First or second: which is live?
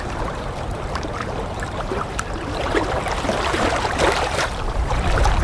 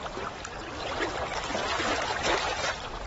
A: second